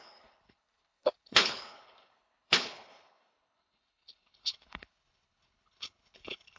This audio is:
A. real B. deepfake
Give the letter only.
B